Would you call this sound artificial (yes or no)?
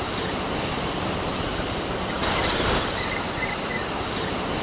no